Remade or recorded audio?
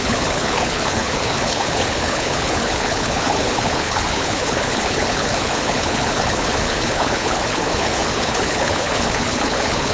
remade